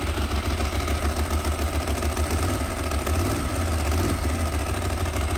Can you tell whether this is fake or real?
real